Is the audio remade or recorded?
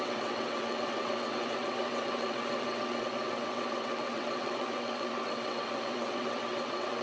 remade